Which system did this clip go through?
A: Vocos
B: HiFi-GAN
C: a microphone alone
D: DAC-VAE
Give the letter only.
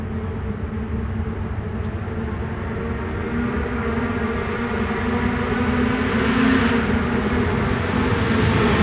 C